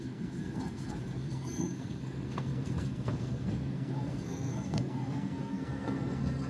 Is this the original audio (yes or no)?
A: no